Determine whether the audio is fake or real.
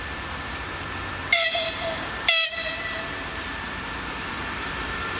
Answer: fake